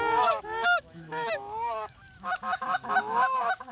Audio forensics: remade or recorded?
remade